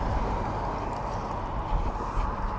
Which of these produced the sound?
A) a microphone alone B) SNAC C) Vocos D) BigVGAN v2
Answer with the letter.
A